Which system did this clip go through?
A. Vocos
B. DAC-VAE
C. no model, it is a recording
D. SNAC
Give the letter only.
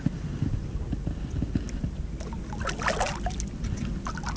C